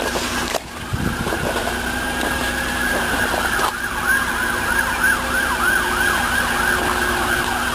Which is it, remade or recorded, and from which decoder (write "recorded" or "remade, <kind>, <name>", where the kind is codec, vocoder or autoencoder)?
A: recorded